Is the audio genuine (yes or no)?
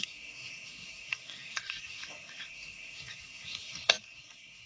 no